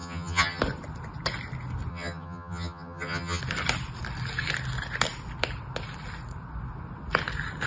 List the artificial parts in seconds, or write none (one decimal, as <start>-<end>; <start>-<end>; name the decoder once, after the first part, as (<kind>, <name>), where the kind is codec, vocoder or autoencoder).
0.0-0.6 (vocoder, HiFi-GAN); 1.9-3.4